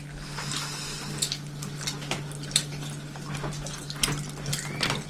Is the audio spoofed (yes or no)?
no